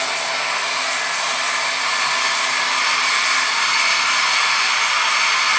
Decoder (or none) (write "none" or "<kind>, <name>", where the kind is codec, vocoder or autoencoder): none